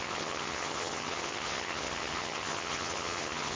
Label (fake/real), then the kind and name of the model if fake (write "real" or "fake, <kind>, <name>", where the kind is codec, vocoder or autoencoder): fake, vocoder, HiFi-GAN